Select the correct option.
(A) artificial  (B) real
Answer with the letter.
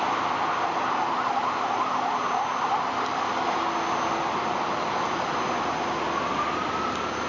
B